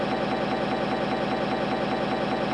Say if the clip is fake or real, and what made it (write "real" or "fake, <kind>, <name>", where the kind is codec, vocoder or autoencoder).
real